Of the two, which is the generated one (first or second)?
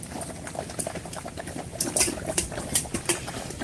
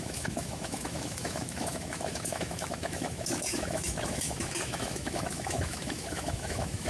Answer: second